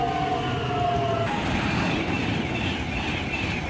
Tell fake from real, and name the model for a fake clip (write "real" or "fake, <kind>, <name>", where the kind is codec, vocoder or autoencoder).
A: real